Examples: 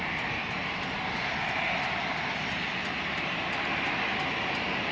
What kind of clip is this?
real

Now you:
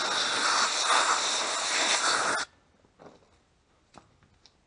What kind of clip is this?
real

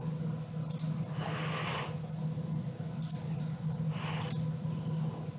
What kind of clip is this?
real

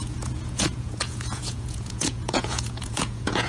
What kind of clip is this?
fake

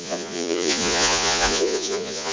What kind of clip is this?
fake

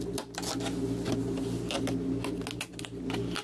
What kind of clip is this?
real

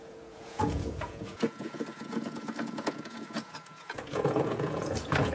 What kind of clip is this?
fake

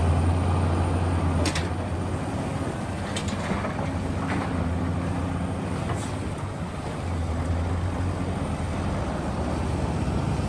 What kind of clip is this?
real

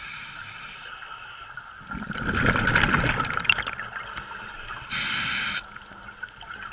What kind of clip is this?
real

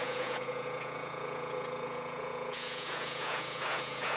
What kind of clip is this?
fake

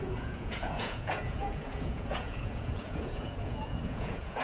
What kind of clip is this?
fake